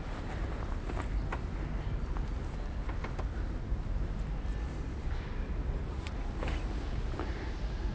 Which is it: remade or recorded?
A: recorded